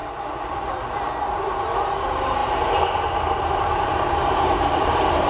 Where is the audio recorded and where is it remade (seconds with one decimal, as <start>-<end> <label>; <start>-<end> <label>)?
0.0-2.0 recorded; 2.0-5.3 remade